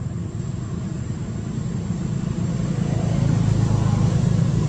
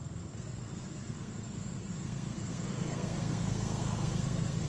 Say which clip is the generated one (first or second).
second